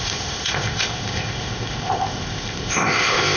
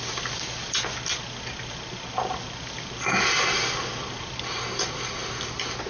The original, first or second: second